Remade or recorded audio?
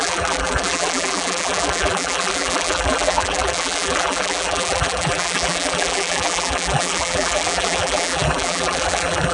remade